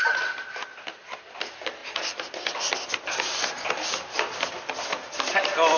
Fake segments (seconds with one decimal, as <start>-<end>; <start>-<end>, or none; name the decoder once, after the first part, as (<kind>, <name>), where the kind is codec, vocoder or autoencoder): none